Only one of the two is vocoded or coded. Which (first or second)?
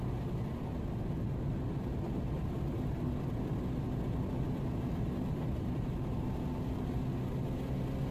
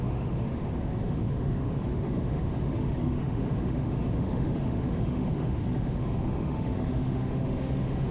second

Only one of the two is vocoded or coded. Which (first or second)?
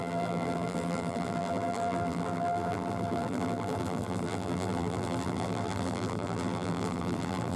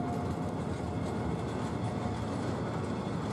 first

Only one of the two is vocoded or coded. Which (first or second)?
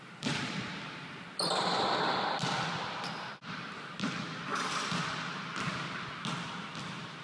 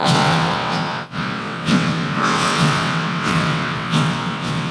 second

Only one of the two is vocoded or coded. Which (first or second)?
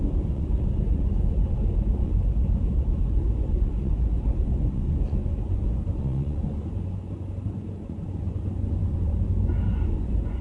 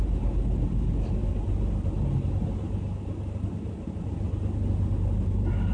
first